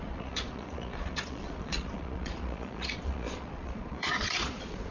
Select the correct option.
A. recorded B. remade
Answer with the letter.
B